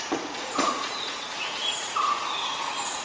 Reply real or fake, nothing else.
fake